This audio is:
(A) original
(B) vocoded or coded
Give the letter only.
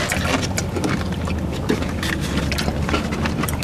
A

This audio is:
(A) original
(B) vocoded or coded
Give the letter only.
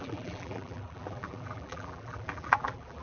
B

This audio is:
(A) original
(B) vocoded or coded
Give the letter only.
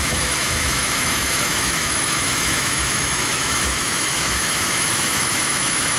B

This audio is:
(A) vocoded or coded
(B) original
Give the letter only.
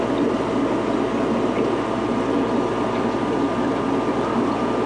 B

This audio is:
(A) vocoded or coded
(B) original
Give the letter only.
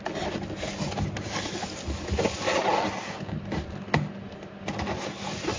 B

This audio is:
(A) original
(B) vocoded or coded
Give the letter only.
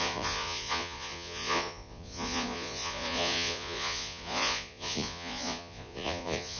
B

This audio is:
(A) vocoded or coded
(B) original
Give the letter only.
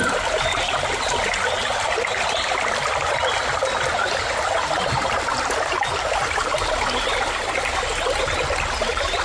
B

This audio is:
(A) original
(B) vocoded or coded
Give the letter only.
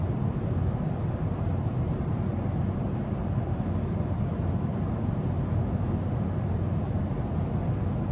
A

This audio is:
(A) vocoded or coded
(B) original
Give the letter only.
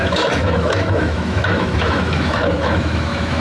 A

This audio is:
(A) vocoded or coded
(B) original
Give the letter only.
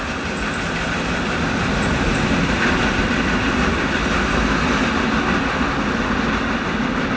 B